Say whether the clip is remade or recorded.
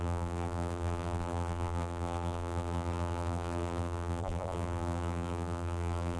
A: remade